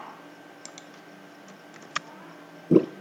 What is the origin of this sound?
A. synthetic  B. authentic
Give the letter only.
B